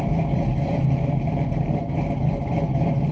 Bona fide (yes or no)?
no